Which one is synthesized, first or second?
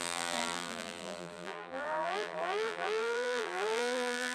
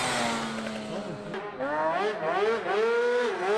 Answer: first